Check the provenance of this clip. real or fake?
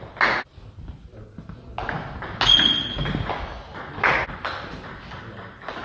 real